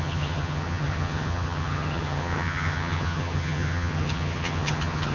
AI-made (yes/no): yes